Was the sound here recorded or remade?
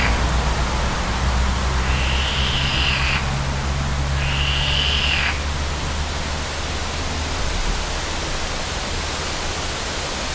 recorded